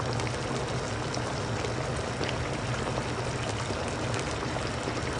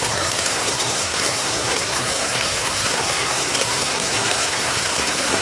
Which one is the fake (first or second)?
second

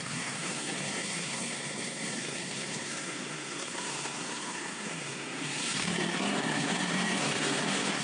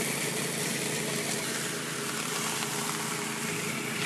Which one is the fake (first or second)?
first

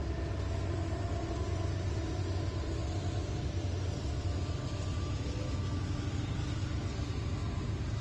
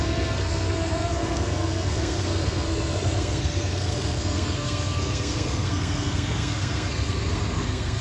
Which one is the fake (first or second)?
second